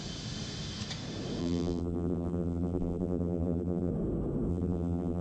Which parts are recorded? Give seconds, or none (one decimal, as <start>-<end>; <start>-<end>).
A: 0.0-1.4; 3.9-4.5